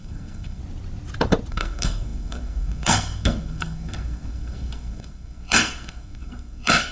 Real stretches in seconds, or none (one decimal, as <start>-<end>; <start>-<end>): 0.6-1.5